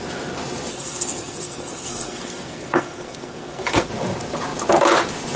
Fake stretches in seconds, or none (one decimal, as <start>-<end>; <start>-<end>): 0.7-3.9